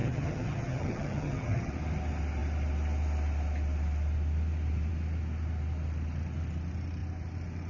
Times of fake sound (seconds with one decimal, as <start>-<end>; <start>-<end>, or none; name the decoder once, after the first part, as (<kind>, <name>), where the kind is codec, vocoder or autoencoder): 0.0-1.7 (vocoder, HiFi-GAN)